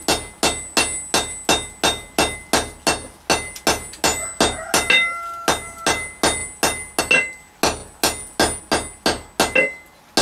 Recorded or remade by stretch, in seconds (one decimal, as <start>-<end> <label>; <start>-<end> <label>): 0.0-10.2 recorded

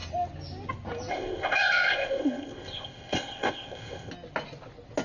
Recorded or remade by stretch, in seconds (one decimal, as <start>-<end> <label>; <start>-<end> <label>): 0.0-1.1 recorded; 1.1-4.1 remade; 4.1-5.0 recorded

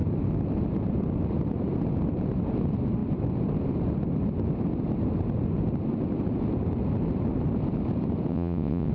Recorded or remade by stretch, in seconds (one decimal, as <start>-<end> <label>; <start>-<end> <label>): 0.0-8.3 recorded; 8.3-8.9 remade

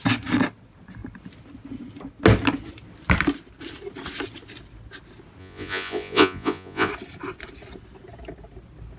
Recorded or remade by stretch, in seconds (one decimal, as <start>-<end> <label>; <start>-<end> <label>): 0.0-5.4 recorded; 5.4-6.9 remade; 6.9-9.0 recorded

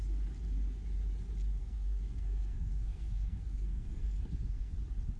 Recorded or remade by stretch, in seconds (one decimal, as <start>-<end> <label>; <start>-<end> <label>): 0.0-1.6 recorded; 1.6-4.7 remade; 4.7-5.2 recorded

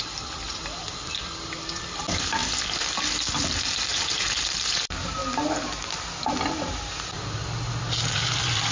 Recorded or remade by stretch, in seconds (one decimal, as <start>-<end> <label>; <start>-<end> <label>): 0.0-2.4 remade; 2.4-4.0 recorded; 4.0-5.2 remade; 5.2-8.1 recorded; 8.1-8.7 remade

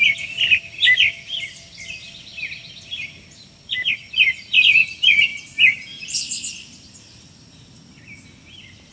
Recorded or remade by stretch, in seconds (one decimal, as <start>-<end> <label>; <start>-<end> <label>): 0.0-5.3 recorded; 5.3-8.0 remade; 8.0-8.9 recorded